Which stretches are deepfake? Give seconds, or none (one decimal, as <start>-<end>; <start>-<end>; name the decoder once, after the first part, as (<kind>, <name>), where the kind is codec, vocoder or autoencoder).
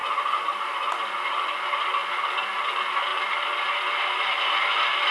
none